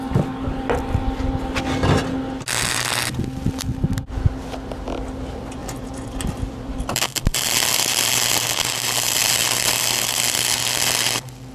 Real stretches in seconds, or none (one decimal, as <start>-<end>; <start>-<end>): 0.0-5.6; 8.1-9.2; 9.7-11.5